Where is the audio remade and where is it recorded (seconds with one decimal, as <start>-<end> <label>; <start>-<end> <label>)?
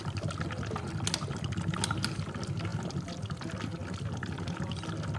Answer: 0.0-5.2 recorded